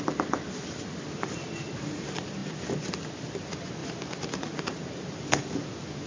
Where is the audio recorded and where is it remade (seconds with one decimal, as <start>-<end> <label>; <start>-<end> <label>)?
0.0-3.8 recorded; 3.8-5.2 remade; 5.2-6.1 recorded